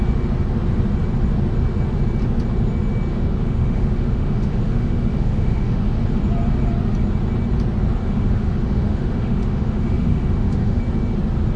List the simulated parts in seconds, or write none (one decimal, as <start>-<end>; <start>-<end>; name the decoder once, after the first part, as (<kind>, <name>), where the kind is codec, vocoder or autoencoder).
3.1-5.8 (autoencoder, DAC-VAE); 8.0-10.8